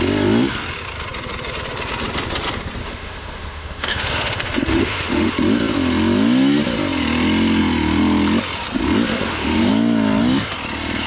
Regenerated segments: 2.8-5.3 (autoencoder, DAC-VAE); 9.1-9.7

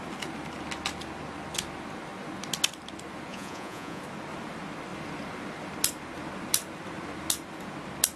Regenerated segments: 3.3-4.0 (vocoder, Vocos)

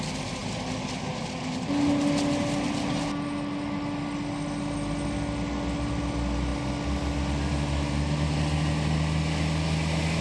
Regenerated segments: none

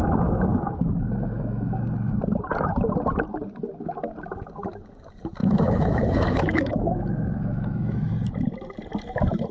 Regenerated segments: 0.5-1.8 (autoencoder, DAC-VAE); 5.4-8.1

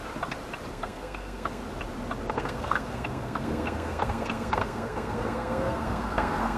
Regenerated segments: 0.7-1.6 (codec, SNAC); 2.3-6.6

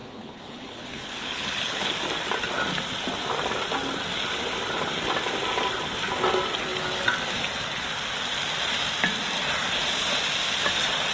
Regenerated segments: 0.0-1.9 (codec, HILCodec)

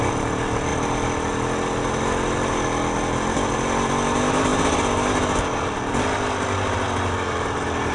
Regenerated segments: none